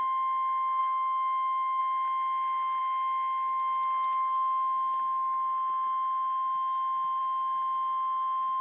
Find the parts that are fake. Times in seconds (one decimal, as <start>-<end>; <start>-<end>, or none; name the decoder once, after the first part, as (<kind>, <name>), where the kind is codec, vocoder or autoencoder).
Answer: 0.8-1.8 (codec, SNAC)